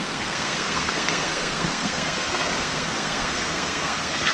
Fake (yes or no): yes